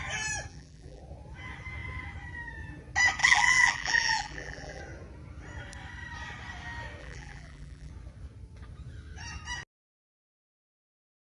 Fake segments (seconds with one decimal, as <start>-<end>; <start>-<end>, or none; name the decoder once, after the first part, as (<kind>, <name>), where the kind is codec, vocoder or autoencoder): 0.5-1.0 (vocoder, BigVGAN v2); 3.2-4.8; 7.0-7.9